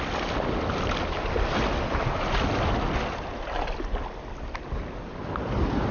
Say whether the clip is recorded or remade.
recorded